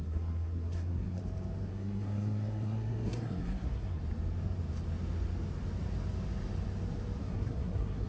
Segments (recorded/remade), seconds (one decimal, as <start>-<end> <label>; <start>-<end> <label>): 0.0-1.2 remade; 1.2-1.7 recorded; 1.7-4.0 remade; 4.0-7.2 recorded; 7.2-8.1 remade